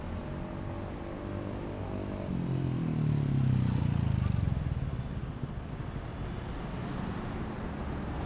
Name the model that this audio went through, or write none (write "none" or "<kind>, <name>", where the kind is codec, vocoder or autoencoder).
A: none